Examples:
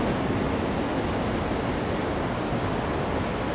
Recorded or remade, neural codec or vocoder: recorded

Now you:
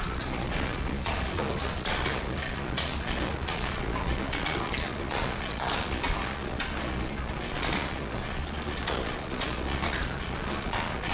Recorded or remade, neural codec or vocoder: remade, vocoder, Vocos